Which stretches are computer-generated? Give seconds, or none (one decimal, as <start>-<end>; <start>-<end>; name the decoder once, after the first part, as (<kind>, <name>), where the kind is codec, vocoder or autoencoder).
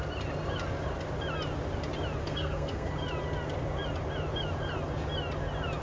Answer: 2.2-2.9 (codec, SNAC)